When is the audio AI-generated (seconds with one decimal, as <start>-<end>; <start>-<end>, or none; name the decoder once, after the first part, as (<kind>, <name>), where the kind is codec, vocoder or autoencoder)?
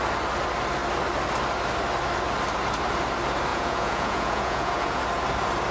3.5-5.0 (vocoder, Vocos)